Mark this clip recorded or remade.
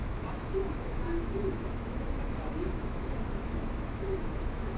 remade